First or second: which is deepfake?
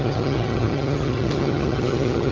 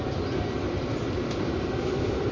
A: first